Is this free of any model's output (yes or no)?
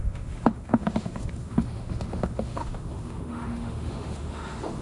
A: no